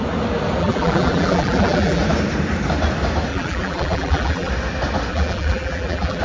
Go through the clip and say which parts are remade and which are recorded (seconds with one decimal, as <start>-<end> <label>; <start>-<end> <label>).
0.0-0.6 recorded; 0.6-2.0 remade; 2.0-3.3 recorded; 3.3-4.5 remade; 4.5-5.1 recorded; 5.1-6.2 remade